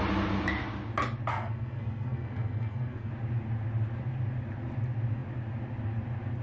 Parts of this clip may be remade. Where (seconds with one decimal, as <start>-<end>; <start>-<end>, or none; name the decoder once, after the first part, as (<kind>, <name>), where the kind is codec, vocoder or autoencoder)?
1.3-3.1 (codec, SNAC)